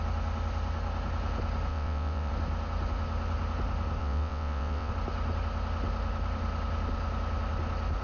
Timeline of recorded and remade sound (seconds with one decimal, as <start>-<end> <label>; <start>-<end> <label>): 0.0-1.7 recorded; 1.7-2.3 remade; 2.3-4.0 recorded; 4.0-4.9 remade; 4.9-8.0 recorded